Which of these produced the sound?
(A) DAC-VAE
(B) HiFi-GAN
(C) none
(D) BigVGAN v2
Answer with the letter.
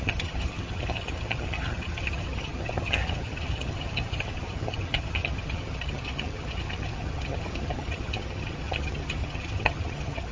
B